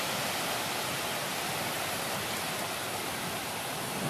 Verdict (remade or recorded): recorded